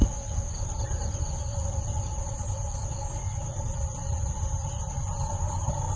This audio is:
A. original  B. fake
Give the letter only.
A